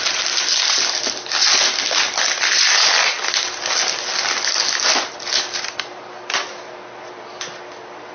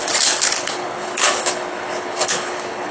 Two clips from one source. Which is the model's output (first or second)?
second